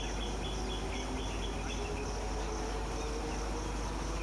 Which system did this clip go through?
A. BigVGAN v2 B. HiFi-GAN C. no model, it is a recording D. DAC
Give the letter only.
C